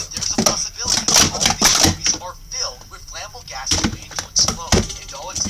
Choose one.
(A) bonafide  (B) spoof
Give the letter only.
A